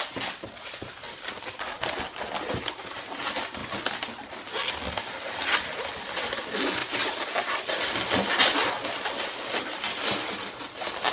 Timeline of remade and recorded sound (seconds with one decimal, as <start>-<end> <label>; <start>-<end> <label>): 0.0-6.8 recorded; 6.8-7.6 remade; 7.6-11.1 recorded